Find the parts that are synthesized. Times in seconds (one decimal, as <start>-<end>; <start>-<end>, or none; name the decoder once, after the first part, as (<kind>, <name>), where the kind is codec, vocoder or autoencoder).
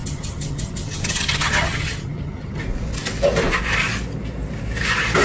0.0-2.6 (vocoder, HiFi-GAN)